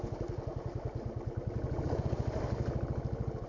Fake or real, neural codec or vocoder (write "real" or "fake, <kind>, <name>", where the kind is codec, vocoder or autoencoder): real